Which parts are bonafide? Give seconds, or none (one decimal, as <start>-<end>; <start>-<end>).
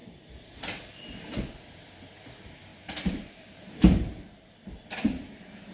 1.0-2.7; 4.8-5.7